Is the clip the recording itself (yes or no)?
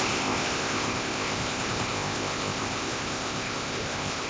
no